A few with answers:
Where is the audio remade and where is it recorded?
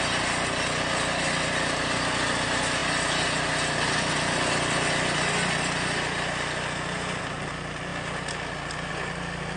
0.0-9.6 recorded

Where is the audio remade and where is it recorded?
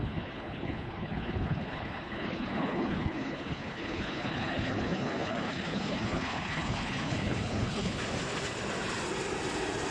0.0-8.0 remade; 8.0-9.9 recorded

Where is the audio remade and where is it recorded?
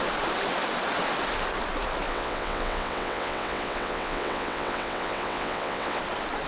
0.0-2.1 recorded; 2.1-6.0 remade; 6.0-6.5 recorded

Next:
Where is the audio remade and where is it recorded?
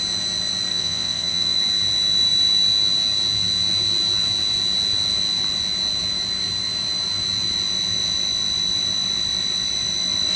0.0-0.7 recorded; 0.7-1.6 remade; 1.6-10.4 recorded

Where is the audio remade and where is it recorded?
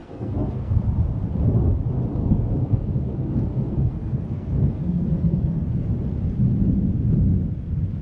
0.0-0.9 remade; 0.9-2.2 recorded; 2.2-5.9 remade; 5.9-8.0 recorded